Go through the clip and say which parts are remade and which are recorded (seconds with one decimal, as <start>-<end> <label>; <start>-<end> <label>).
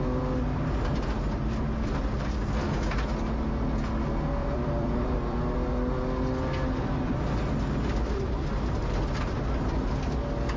0.0-4.4 recorded; 4.4-5.4 remade; 5.4-10.6 recorded